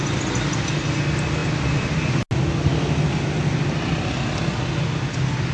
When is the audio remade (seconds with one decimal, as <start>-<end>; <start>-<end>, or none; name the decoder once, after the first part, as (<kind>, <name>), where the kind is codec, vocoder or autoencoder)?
none